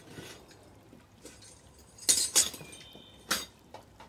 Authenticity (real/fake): real